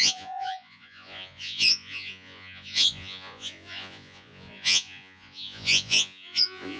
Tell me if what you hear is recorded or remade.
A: remade